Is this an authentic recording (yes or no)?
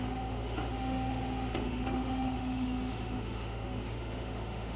no